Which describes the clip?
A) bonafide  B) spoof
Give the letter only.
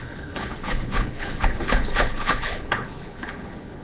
B